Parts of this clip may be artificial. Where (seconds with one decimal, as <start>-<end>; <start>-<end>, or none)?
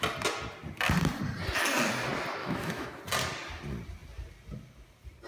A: 2.4-3.0